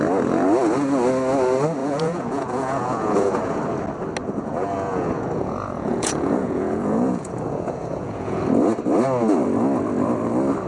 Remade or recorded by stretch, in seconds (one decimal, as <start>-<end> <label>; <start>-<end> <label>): 0.0-1.8 recorded; 1.8-3.6 remade; 3.6-4.2 recorded; 4.2-8.4 remade; 8.4-10.7 recorded